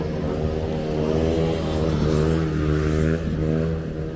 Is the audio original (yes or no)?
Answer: yes